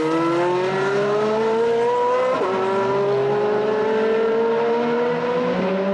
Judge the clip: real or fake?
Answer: real